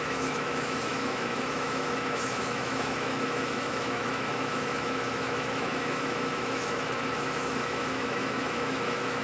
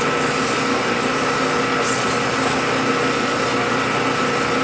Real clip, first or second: second